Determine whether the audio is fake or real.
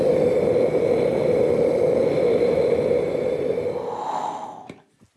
real